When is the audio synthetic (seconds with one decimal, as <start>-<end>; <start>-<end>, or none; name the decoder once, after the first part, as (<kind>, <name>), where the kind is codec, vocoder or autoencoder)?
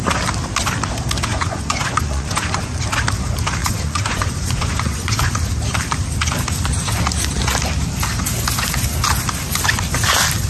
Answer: 1.3-2.8 (vocoder, Vocos); 3.6-5.5